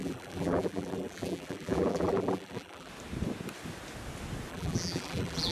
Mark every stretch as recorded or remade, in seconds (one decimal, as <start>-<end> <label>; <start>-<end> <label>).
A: 0.0-2.9 remade; 2.9-4.5 recorded; 4.5-5.5 remade